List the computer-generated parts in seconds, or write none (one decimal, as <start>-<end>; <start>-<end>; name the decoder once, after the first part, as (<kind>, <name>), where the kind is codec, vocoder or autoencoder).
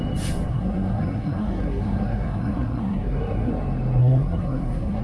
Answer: 0.5-3.5 (codec, SNAC); 4.0-5.0